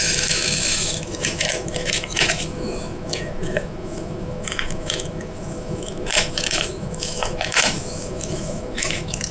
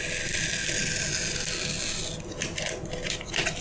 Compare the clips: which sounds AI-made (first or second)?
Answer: first